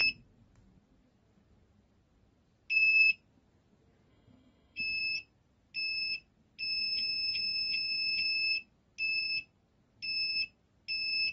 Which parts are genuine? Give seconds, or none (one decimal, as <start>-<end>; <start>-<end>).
0.0-4.1; 5.0-11.3